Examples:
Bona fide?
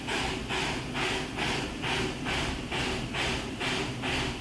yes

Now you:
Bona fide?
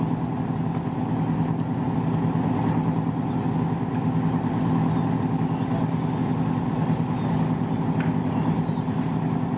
yes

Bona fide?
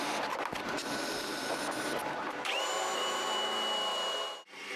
yes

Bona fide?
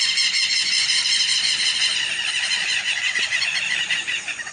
no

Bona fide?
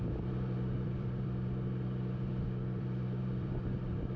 no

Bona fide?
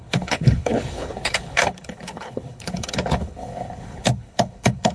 no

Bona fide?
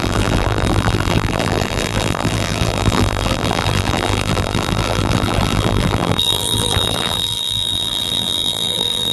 no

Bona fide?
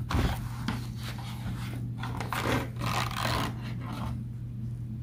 yes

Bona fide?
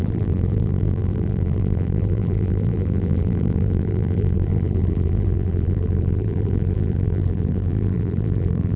no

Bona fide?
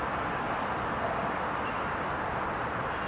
yes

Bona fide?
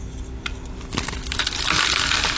yes